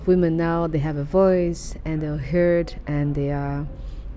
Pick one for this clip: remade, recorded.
recorded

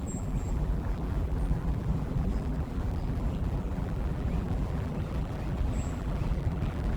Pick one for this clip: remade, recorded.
remade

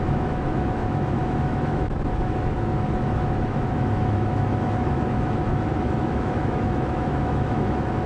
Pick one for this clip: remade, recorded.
remade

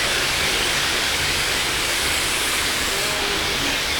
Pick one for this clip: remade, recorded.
remade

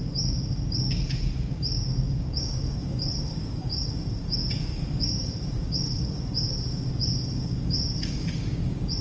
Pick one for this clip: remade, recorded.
remade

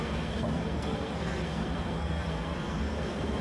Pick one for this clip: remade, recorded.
remade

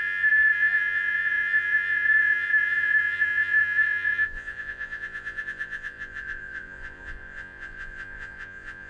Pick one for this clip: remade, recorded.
remade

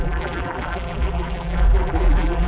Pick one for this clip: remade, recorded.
remade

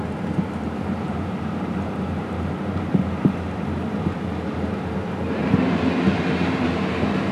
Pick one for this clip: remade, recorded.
remade